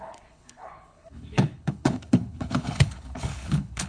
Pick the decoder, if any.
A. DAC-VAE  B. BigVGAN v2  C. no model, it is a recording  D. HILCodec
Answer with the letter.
D